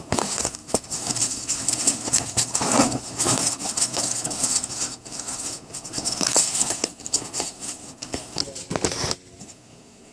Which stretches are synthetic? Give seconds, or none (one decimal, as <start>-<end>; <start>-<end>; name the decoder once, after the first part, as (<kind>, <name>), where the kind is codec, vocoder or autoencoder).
0.0-8.4 (codec, SNAC); 9.4-10.1